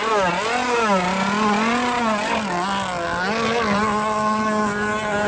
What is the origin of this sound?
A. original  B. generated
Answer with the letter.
A